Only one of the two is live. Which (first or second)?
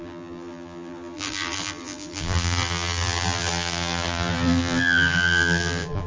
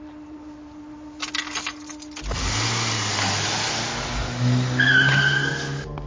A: second